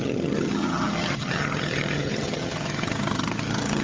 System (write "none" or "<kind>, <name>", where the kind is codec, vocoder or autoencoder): vocoder, HiFi-GAN